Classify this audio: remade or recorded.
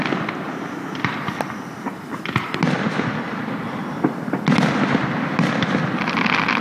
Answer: recorded